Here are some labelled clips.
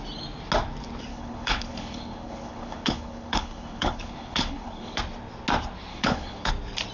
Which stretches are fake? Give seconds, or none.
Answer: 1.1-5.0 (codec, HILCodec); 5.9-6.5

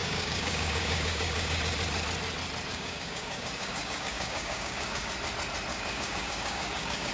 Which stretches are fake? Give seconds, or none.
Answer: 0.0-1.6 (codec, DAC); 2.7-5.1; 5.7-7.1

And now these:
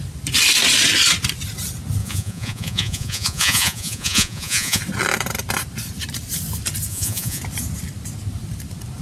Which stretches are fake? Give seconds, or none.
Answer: 2.0-4.8 (vocoder, Vocos); 6.9-7.4

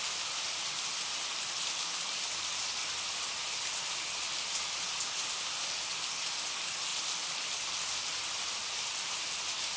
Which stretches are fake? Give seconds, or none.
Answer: 0.0-2.8 (vocoder, BigVGAN v2); 4.1-9.8

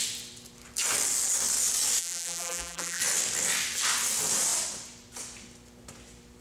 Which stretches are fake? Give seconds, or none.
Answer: 2.0-3.0 (vocoder, BigVGAN v2)

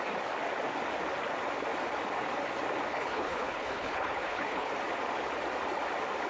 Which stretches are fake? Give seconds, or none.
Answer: 2.9-4.7 (codec, HILCodec)